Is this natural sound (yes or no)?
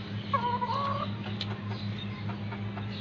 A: yes